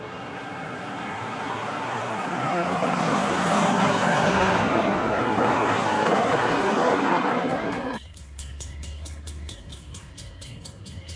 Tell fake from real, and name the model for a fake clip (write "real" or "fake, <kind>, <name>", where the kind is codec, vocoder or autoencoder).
fake, codec, SNAC